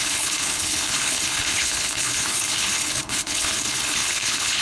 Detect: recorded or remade remade